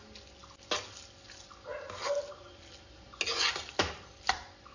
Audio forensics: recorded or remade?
recorded